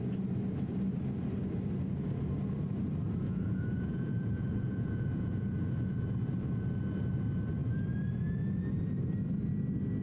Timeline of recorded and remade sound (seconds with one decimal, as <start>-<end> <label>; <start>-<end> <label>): 0.0-3.0 recorded; 3.0-6.0 remade; 6.0-10.0 recorded